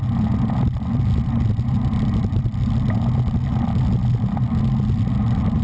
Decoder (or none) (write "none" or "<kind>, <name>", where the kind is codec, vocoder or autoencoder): none